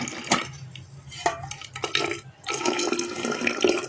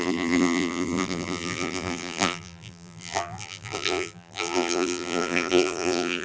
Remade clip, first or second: second